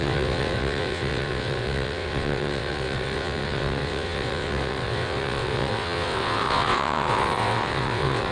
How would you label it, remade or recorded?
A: remade